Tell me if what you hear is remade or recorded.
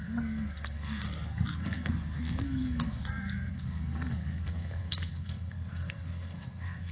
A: remade